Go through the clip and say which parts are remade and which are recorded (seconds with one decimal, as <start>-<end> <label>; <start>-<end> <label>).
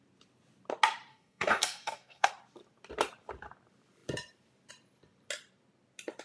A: 0.0-1.1 recorded; 1.1-2.3 remade; 2.3-6.2 recorded